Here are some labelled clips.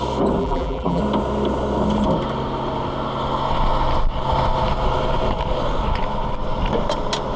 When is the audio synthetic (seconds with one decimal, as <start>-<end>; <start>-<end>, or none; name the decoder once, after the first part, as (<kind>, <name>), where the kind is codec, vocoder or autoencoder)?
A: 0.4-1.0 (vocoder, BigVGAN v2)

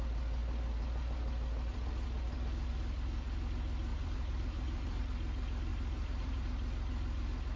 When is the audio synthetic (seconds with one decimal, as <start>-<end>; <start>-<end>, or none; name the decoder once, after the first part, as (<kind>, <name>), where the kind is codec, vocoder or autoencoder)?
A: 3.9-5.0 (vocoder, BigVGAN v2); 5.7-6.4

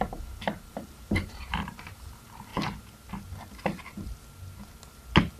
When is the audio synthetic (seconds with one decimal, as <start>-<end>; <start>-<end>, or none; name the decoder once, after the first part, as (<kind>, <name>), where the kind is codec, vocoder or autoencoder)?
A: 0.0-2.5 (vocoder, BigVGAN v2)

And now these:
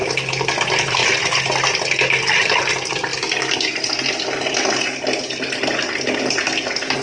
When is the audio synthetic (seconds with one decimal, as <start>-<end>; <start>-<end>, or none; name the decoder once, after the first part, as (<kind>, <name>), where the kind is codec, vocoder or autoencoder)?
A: 0.0-1.0 (vocoder, BigVGAN v2); 2.6-3.1; 6.2-7.0

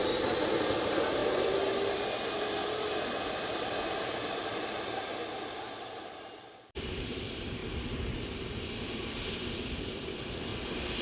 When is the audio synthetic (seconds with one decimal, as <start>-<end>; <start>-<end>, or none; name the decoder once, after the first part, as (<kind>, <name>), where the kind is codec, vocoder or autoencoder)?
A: 0.0-7.6 (vocoder, BigVGAN v2); 9.1-10.5

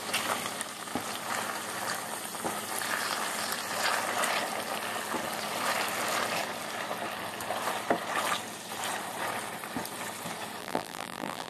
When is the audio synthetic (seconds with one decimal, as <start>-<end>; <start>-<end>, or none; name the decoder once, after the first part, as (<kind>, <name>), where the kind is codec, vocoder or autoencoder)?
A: 10.6-11.5 (vocoder, BigVGAN v2)